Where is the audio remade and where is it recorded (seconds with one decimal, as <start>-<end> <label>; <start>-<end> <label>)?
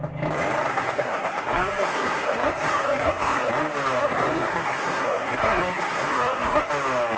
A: 0.0-0.7 recorded; 0.7-3.5 remade; 3.5-4.0 recorded; 4.0-6.7 remade; 6.7-7.2 recorded